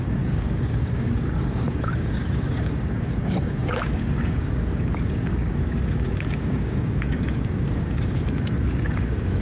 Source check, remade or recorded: remade